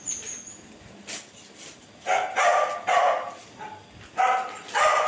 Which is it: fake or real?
real